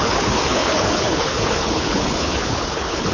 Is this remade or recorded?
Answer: remade